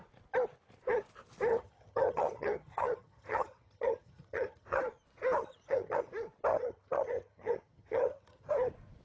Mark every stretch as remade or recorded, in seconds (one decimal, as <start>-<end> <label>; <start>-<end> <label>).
0.0-1.5 recorded; 1.5-4.8 remade; 4.8-5.4 recorded; 5.4-6.1 remade; 6.1-6.5 recorded; 6.5-8.5 remade; 8.5-9.0 recorded